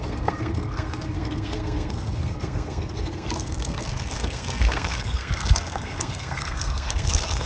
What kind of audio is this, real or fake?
fake